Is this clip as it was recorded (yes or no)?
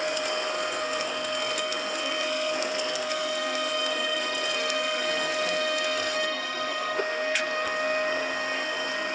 no